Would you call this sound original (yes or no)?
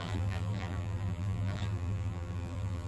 no